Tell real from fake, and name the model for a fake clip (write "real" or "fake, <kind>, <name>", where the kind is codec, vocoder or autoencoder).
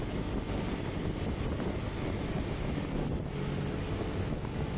real